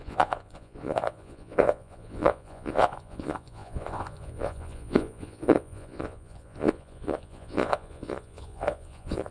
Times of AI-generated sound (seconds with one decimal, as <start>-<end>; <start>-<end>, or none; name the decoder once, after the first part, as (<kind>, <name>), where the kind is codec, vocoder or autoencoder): 0.0-9.3 (vocoder, Vocos)